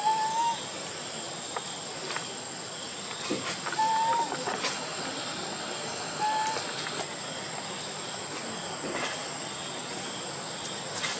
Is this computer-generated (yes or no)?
no